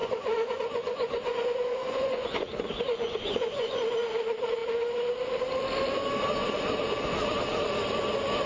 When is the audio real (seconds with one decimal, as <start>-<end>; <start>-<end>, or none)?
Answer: 3.8-8.5